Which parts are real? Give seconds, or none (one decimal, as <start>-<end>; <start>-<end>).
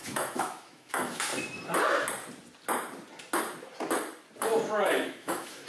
1.3-4.7